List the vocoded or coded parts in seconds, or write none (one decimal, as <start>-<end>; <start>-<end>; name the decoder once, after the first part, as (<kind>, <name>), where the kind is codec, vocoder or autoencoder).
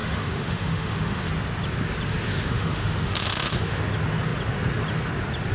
0.0-1.3 (autoencoder, DAC-VAE); 2.3-3.8